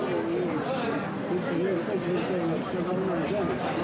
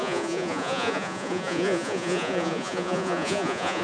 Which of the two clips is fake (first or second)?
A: second